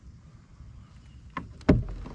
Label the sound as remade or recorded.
recorded